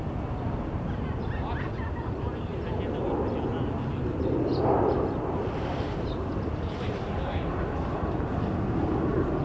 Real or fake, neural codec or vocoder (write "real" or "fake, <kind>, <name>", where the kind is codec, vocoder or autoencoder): real